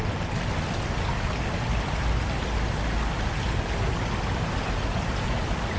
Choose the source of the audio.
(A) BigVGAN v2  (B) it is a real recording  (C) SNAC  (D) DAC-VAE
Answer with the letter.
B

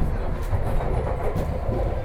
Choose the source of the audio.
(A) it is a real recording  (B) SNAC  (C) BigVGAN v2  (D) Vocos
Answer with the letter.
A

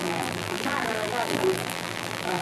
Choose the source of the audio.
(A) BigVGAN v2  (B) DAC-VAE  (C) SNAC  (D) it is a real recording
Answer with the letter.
A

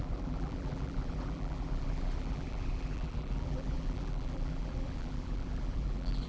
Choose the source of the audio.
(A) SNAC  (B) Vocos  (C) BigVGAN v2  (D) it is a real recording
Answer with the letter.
C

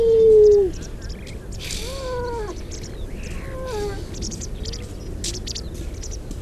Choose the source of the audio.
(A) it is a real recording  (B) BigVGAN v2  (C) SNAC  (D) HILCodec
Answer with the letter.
A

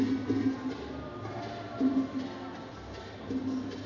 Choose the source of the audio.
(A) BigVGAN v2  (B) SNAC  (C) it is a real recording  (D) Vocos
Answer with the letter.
C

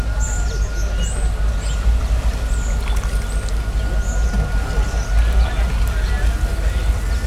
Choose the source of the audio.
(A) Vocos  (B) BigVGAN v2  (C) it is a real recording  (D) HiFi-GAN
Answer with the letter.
C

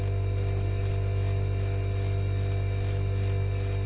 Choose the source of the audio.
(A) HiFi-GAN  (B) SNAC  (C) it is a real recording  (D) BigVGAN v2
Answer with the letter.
C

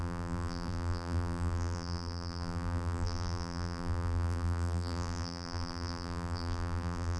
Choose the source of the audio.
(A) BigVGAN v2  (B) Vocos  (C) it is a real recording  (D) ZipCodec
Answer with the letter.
A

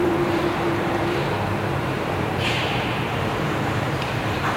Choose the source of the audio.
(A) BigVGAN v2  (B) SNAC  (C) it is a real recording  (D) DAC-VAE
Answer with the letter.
A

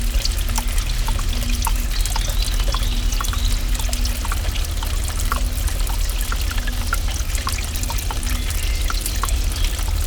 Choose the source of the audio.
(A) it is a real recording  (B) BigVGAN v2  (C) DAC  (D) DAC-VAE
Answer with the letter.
A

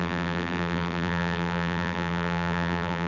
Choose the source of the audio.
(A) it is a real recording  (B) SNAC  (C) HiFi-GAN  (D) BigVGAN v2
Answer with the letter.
D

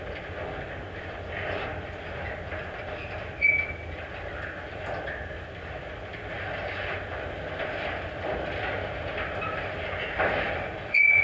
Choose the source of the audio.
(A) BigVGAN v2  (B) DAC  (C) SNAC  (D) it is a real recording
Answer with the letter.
D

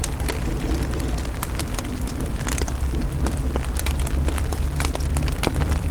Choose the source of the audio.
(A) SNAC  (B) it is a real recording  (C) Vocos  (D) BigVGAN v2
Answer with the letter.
D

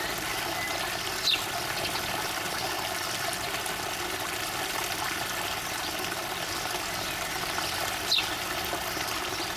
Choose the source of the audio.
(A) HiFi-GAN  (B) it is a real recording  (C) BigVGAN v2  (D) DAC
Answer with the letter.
B